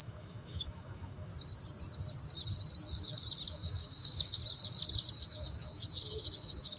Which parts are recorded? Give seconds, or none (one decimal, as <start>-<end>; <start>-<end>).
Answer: 1.3-3.5; 4.4-5.1